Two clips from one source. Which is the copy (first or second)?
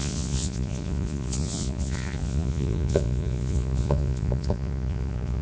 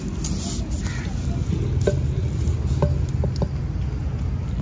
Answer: first